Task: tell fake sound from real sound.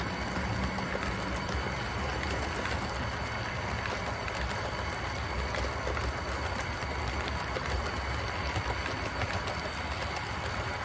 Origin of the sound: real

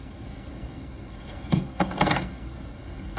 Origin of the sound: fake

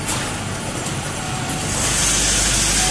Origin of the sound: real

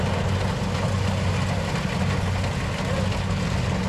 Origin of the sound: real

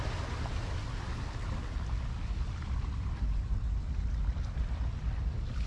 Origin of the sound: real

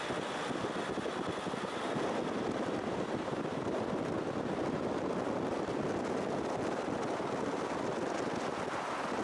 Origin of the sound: real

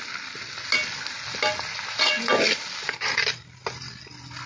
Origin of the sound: real